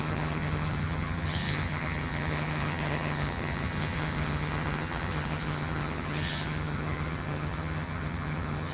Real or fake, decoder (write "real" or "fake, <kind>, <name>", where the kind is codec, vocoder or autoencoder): fake, vocoder, HiFi-GAN